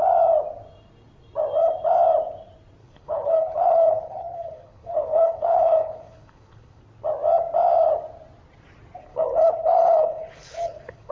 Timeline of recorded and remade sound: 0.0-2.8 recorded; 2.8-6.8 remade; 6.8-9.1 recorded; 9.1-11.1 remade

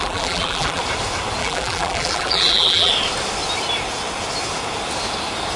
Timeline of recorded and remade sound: 0.0-0.8 remade; 0.8-1.4 recorded; 1.4-2.9 remade; 2.9-5.6 recorded

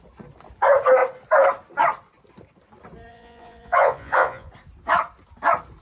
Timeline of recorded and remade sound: 0.0-3.1 recorded; 3.1-4.5 remade; 4.5-5.8 recorded

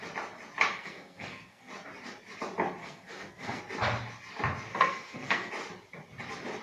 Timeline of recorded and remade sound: 0.0-0.7 recorded; 0.7-1.7 remade; 1.7-2.8 recorded; 2.8-3.6 remade; 3.6-4.7 recorded; 4.7-5.5 remade; 5.5-6.6 recorded

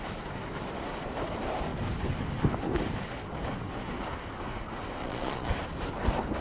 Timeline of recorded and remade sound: 0.0-5.0 recorded; 5.0-5.5 remade; 5.5-6.4 recorded